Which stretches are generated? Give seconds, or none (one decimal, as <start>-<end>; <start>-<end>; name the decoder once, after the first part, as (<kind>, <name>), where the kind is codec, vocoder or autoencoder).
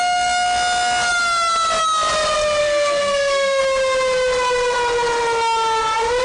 2.6-3.6 (codec, SNAC)